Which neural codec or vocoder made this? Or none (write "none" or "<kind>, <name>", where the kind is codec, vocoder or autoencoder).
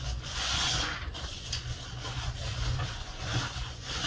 vocoder, Vocos